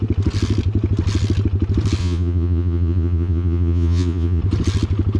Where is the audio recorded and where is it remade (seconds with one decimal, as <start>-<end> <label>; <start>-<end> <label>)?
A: 0.0-2.0 recorded; 2.0-4.4 remade; 4.4-5.2 recorded